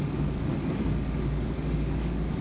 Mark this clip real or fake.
fake